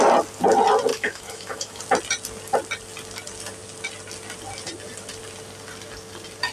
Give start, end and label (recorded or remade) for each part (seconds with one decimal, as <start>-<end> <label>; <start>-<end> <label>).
0.0-0.9 recorded; 0.9-1.8 remade; 1.8-6.5 recorded